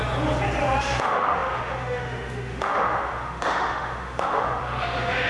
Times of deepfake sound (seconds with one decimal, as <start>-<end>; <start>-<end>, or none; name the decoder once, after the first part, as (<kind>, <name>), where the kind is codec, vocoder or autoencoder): 0.6-5.3 (autoencoder, DAC-VAE)